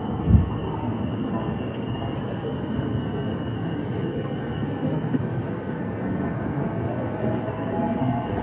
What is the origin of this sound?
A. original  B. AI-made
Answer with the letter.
B